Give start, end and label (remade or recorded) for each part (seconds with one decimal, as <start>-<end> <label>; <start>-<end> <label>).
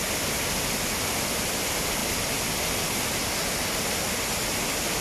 0.0-5.0 recorded